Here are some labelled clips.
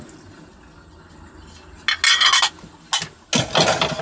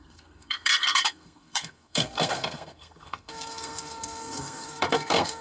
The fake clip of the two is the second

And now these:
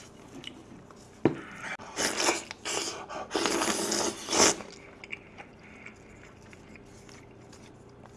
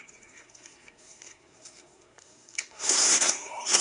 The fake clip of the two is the second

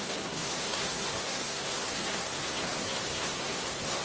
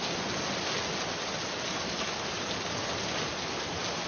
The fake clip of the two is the first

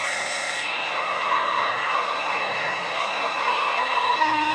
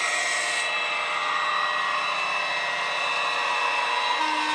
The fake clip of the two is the first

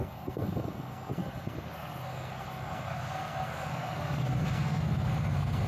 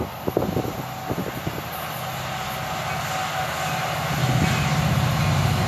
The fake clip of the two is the first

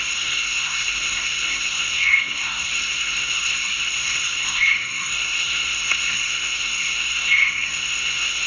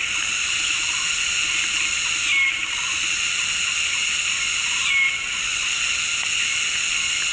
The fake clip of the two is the first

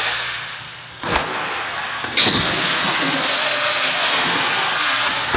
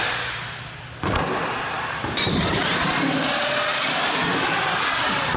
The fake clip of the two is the first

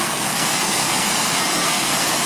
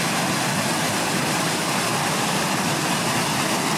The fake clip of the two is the first